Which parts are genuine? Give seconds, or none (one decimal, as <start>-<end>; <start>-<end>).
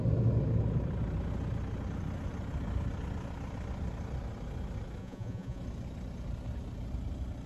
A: 0.0-5.0; 5.6-7.5